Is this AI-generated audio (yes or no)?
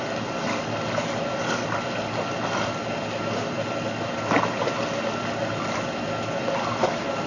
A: no